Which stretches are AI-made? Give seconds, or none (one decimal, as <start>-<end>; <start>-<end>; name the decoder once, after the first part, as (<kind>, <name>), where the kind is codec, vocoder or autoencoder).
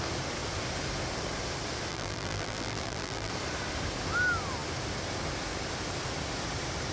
1.9-3.3 (vocoder, BigVGAN v2)